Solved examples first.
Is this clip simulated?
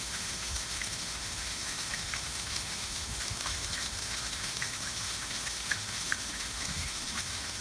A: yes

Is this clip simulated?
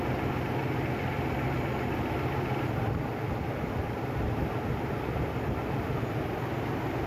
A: no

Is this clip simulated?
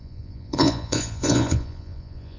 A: yes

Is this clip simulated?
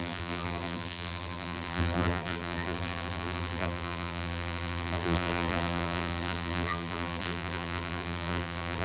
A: yes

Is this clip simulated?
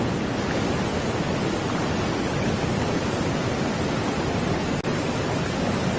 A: no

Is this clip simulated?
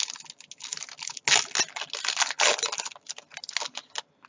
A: no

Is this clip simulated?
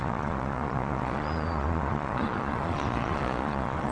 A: yes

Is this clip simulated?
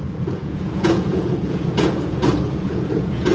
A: yes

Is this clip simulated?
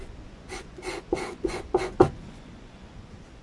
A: yes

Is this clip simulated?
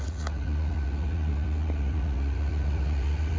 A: yes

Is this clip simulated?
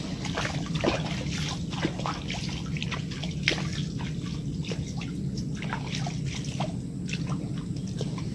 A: no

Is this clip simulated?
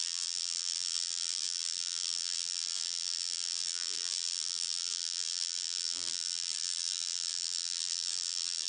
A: yes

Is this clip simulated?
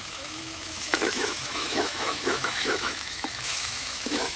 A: yes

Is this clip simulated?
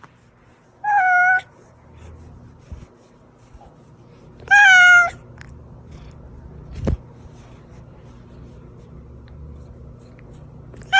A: no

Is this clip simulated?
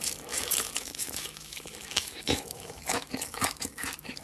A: yes